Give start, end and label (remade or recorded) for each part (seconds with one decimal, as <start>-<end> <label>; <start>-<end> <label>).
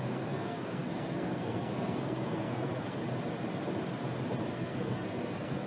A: 0.0-3.0 remade; 3.0-4.5 recorded; 4.5-5.7 remade